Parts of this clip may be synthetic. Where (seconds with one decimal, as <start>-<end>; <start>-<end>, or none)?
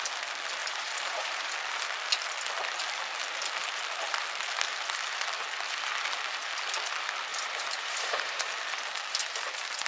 0.6-1.5; 7.3-8.5